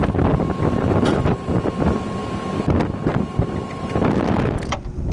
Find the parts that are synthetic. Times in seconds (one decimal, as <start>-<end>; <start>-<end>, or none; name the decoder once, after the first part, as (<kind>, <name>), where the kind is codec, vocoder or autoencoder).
0.6-5.1 (vocoder, BigVGAN v2)

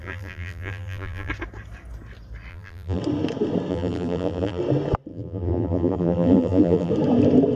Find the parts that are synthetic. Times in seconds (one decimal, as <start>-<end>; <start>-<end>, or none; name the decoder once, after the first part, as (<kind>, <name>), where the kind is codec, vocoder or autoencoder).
0.0-1.3 (vocoder, BigVGAN v2); 2.5-3.0; 3.7-4.6; 5.1-6.9

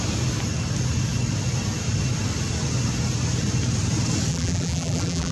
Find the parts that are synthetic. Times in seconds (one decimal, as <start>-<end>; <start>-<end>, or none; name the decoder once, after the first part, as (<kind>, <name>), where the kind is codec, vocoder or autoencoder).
4.3-5.3 (vocoder, BigVGAN v2)

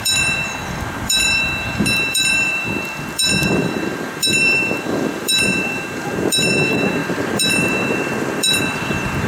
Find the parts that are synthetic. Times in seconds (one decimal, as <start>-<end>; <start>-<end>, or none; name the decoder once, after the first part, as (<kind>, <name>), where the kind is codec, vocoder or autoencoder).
0.0-9.3 (vocoder, BigVGAN v2)

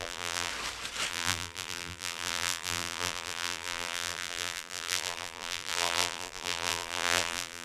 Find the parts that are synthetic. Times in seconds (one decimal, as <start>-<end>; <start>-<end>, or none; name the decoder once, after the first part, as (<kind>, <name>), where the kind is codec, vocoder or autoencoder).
0.0-0.5 (vocoder, BigVGAN v2); 1.1-7.6

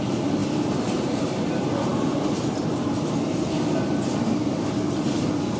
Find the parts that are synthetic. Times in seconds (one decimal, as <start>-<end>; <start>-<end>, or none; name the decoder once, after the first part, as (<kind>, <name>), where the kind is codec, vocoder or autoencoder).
none

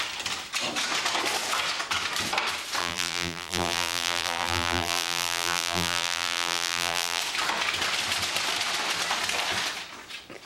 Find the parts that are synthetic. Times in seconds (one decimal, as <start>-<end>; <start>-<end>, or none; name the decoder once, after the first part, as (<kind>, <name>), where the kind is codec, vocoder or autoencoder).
2.8-7.2 (vocoder, BigVGAN v2)

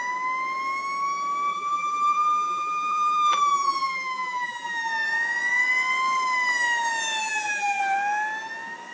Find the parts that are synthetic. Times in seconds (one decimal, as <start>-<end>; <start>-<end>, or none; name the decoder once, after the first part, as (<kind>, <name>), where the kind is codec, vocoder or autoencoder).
1.5-4.9 (vocoder, BigVGAN v2); 7.2-7.8